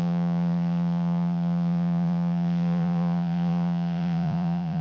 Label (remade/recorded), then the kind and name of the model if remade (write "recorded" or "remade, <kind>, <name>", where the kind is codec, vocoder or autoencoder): remade, vocoder, Vocos